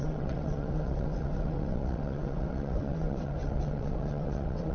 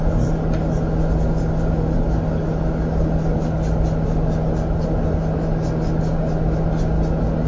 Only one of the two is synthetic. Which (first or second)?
first